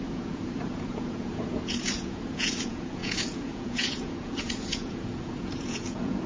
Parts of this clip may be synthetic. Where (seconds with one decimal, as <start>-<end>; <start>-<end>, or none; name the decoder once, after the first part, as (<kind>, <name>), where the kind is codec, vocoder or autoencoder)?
0.0-6.3 (vocoder, Vocos)